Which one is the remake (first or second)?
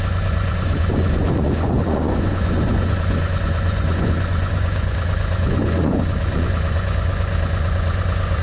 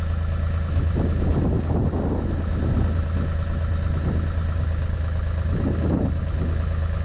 first